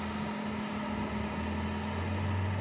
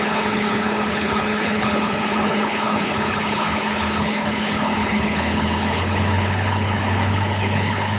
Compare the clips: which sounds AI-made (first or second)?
second